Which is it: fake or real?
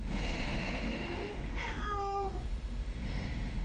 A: fake